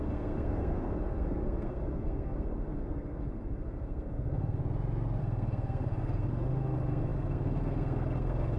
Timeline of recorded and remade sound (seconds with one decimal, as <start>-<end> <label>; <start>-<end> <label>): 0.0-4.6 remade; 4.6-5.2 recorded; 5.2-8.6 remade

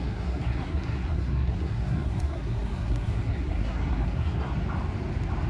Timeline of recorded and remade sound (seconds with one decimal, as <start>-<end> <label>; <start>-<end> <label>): 0.0-4.5 remade; 4.5-5.5 recorded

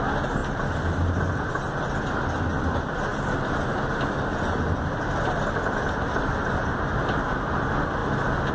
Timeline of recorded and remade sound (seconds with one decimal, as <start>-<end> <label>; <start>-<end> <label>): 0.0-8.5 recorded